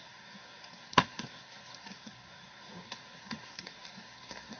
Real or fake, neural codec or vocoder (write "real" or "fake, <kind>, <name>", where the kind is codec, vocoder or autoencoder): fake, codec, SNAC